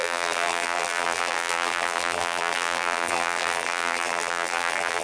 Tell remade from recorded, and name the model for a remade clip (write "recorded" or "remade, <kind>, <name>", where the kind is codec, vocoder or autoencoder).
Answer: remade, vocoder, BigVGAN v2